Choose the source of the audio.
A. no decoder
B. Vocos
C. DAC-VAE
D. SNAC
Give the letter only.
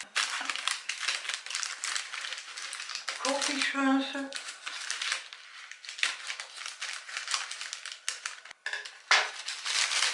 A